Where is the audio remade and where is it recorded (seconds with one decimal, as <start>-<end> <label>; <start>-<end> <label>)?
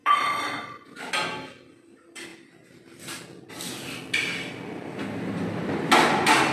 0.0-6.5 recorded